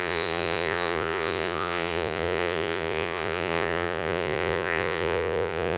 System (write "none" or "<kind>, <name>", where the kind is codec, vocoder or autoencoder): vocoder, Vocos